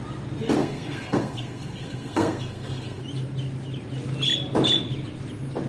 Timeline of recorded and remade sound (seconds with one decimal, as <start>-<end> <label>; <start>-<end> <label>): 0.0-0.6 recorded; 0.6-3.0 remade; 3.0-5.7 recorded